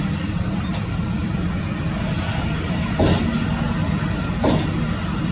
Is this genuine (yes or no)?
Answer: yes